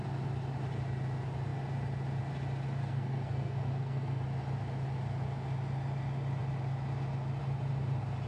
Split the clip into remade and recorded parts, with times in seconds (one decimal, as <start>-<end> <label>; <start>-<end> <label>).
0.0-2.8 recorded; 2.8-4.2 remade; 4.2-8.3 recorded